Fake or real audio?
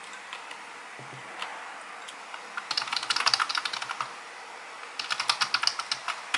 real